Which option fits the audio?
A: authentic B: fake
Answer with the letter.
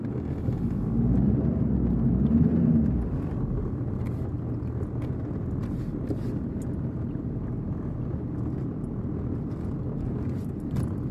A